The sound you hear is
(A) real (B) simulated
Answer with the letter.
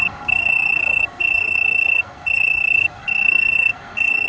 B